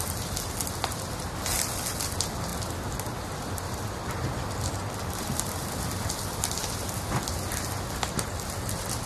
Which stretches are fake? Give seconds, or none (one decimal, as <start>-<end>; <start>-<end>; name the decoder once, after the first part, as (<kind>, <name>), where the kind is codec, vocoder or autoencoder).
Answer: none